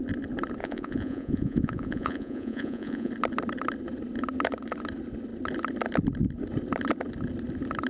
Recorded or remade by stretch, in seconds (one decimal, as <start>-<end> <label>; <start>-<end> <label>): 0.0-0.6 recorded; 0.6-3.1 remade; 3.1-7.9 recorded